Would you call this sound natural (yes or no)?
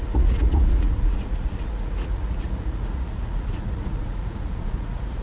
no